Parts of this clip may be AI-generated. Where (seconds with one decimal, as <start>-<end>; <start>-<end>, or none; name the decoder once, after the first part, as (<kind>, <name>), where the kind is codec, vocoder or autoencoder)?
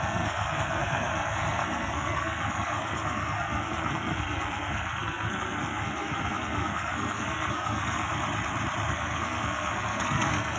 0.0-8.1 (codec, SNAC); 8.9-10.6